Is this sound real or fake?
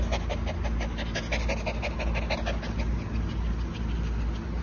real